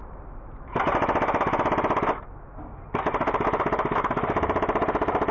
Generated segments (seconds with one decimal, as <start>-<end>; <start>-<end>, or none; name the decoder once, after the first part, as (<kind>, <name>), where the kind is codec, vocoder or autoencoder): none